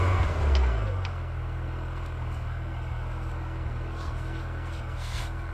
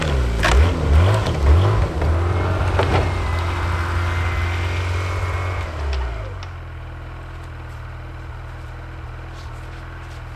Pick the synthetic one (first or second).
first